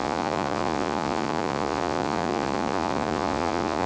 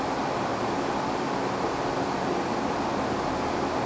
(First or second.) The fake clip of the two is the first